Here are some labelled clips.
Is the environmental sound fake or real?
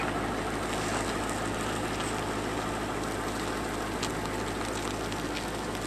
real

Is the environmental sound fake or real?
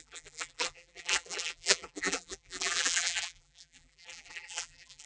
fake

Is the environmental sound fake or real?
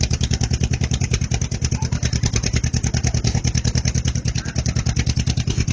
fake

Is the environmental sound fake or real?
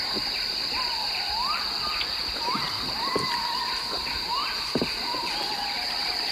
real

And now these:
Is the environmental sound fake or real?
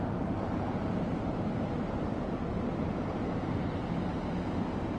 real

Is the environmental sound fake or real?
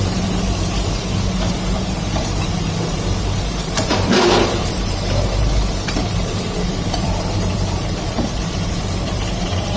fake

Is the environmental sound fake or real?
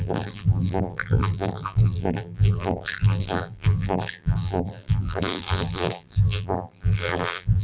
fake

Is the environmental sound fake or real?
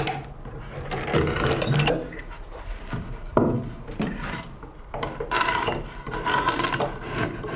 real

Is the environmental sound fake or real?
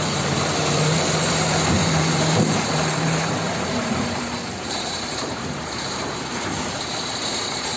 fake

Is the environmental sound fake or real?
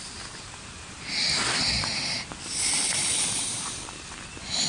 real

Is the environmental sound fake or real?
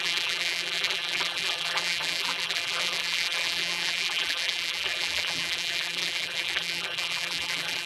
fake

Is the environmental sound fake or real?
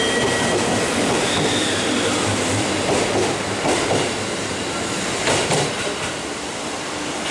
fake